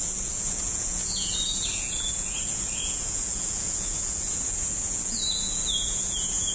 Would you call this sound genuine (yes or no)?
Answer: no